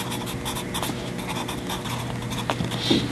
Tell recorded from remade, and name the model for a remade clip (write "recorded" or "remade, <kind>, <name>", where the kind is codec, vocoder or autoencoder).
recorded